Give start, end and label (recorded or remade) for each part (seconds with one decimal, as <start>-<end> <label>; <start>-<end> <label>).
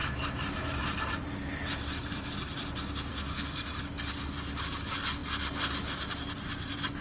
0.0-3.1 recorded; 3.1-3.8 remade; 3.8-7.0 recorded